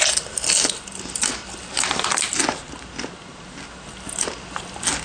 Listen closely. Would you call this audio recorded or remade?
recorded